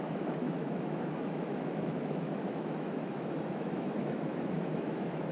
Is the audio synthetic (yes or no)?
yes